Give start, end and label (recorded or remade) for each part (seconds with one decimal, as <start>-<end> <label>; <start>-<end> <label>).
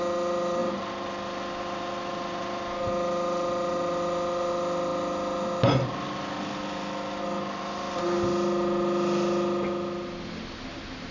0.0-11.1 recorded